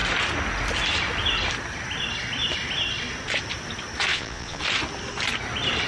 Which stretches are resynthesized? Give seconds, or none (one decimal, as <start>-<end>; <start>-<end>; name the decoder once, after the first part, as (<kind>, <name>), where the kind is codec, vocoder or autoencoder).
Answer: 4.1-4.6 (vocoder, Vocos)